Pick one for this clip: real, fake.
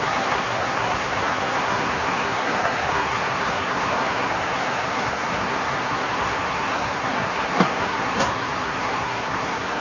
fake